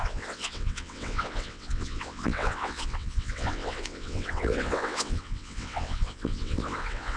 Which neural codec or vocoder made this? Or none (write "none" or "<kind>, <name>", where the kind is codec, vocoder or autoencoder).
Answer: vocoder, WaveNeXt